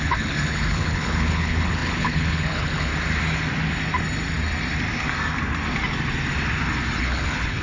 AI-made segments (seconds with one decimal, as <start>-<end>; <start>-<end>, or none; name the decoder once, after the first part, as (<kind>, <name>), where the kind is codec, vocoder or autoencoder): 0.0-2.9 (codec, HILCodec); 7.0-7.6